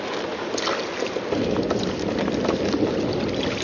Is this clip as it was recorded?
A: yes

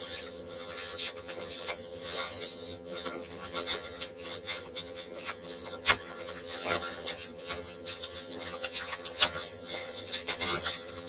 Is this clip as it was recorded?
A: no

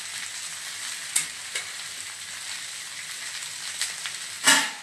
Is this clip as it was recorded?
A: yes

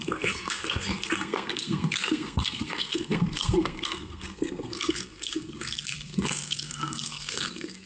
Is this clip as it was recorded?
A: no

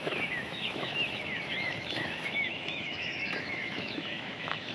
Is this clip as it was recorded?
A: no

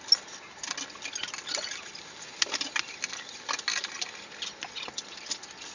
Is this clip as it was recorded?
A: yes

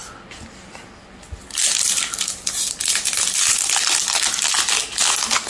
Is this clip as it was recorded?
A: yes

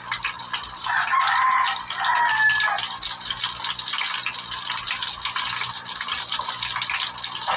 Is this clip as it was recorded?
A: yes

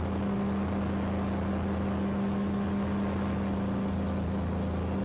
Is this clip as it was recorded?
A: yes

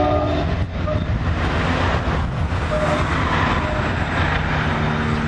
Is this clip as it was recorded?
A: yes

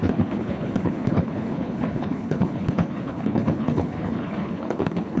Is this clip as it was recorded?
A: no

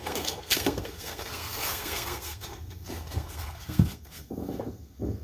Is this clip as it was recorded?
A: no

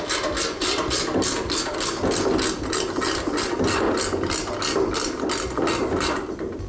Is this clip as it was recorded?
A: yes